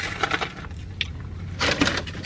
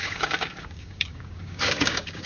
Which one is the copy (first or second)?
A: second